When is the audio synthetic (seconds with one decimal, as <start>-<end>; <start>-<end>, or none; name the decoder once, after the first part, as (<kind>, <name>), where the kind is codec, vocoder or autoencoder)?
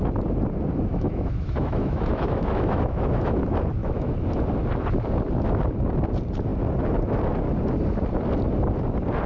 0.9-3.4 (autoencoder, DAC-VAE); 3.8-4.4